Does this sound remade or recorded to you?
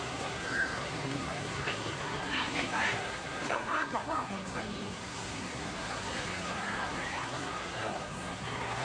remade